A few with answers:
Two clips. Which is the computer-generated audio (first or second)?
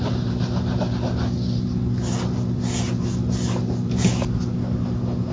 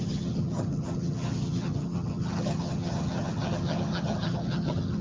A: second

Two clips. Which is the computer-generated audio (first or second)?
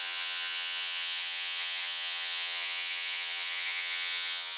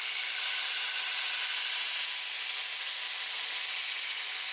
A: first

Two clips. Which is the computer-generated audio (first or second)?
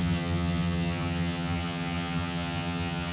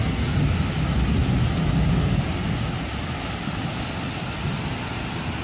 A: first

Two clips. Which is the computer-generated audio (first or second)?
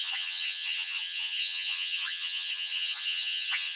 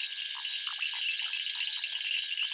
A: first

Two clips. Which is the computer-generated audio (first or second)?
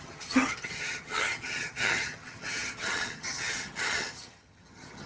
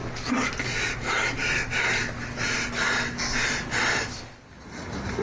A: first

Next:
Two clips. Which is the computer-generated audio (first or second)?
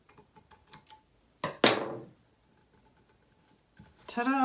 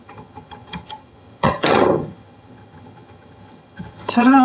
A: second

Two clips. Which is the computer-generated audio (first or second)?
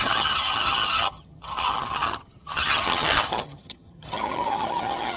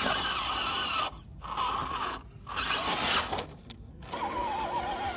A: first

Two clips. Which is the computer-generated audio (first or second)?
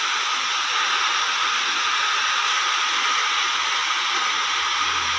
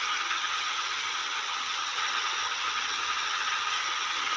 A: second